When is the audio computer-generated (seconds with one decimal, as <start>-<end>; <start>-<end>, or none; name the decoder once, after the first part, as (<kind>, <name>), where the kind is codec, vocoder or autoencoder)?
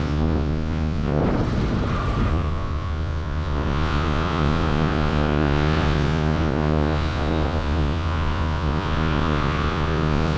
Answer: 0.0-1.2 (vocoder, Vocos); 2.3-10.4